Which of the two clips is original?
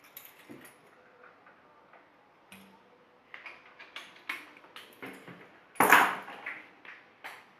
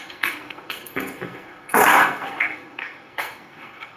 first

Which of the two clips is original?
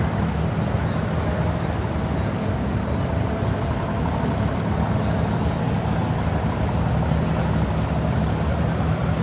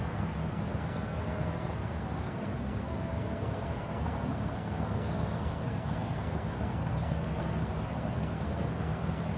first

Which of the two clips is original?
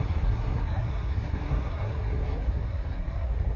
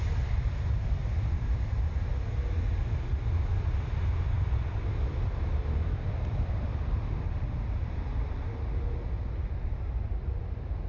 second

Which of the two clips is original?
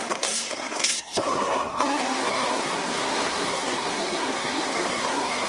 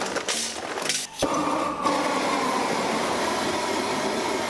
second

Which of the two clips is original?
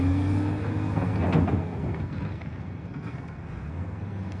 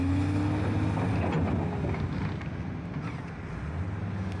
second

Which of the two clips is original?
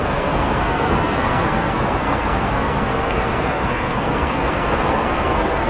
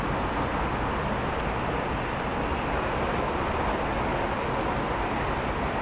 second